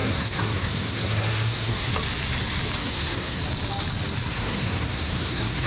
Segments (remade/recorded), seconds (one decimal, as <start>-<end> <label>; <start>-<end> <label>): 0.0-1.9 remade; 1.9-2.8 recorded; 2.8-3.4 remade; 3.4-4.3 recorded; 4.3-5.7 remade